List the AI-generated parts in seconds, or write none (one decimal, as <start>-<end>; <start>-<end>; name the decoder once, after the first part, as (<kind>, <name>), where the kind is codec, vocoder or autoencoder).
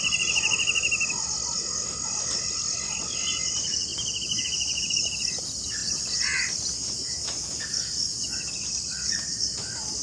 3.9-4.9 (vocoder, BigVGAN v2)